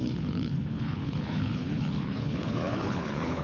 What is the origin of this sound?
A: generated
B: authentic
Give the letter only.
A